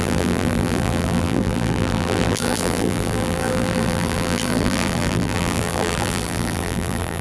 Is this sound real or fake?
fake